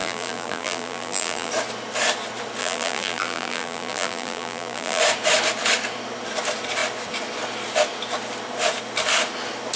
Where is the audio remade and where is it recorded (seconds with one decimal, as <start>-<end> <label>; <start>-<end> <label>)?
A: 0.0-1.5 remade; 1.5-2.6 recorded; 2.6-5.0 remade; 5.0-9.8 recorded